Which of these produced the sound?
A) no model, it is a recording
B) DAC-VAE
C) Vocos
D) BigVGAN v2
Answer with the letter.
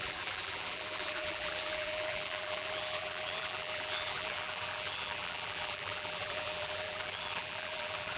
D